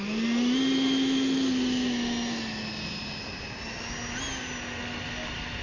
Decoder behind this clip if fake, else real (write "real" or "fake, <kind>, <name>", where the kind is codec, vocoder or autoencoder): real